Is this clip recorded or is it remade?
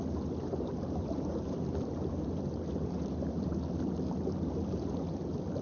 recorded